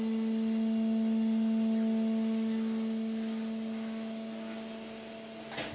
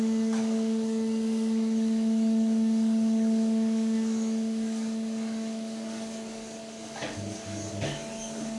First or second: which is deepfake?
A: second